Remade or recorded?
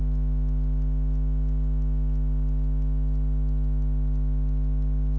recorded